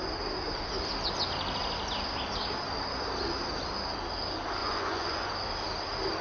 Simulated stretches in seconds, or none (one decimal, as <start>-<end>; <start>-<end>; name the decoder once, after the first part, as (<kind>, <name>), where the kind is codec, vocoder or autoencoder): 4.6-5.3 (vocoder, Vocos)